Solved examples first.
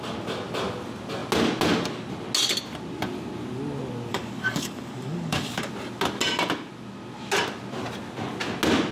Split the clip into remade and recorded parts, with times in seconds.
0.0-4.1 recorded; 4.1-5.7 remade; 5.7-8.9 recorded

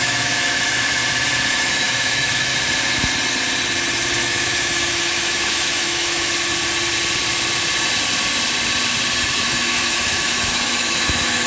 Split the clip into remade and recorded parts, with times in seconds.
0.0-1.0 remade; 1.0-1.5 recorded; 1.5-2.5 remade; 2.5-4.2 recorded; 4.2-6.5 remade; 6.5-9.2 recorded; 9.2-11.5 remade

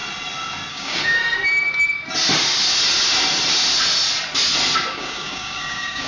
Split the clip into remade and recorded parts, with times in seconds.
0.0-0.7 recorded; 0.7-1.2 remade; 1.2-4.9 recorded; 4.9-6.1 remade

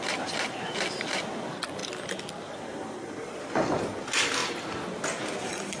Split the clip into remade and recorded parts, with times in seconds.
0.0-5.8 recorded

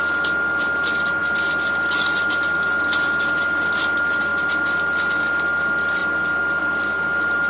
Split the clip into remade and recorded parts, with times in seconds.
0.0-7.5 recorded

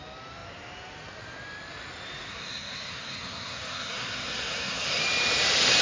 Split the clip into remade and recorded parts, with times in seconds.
0.0-2.3 recorded; 2.3-5.0 remade; 5.0-5.8 recorded